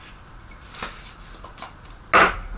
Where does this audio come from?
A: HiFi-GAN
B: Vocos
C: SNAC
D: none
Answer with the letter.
D